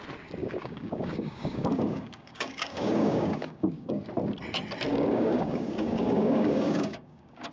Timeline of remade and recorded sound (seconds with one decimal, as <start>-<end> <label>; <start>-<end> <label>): 0.0-0.4 recorded; 0.4-4.0 remade; 4.0-4.9 recorded; 4.9-7.5 remade